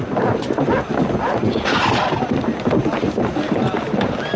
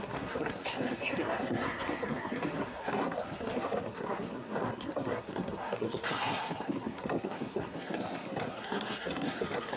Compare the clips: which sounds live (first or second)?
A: first